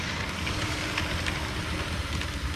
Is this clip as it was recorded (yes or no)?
yes